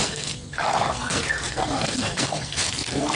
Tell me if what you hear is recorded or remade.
remade